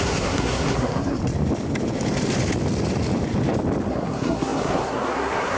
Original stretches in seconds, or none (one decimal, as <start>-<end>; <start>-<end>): 1.2-3.9